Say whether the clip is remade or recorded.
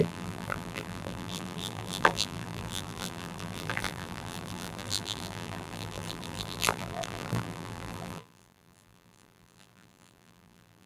remade